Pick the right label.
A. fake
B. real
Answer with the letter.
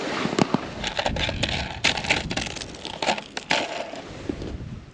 B